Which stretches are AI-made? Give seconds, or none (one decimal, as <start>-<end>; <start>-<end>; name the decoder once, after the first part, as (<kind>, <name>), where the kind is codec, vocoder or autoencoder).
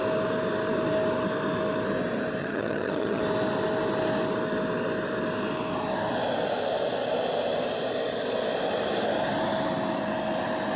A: 2.4-3.2 (vocoder, HiFi-GAN)